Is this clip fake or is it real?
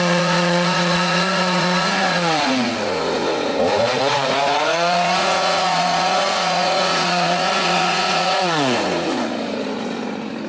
fake